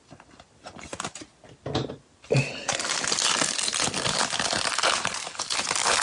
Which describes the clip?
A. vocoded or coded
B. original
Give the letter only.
B